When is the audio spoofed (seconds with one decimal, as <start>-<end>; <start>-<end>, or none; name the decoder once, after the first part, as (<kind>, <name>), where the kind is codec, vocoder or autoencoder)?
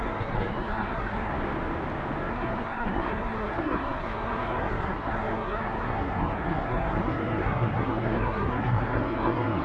0.0-1.3 (codec, SNAC); 2.3-9.6